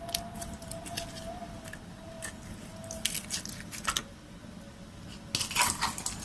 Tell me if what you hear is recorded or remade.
recorded